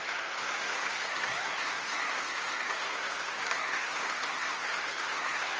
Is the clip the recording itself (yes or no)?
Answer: no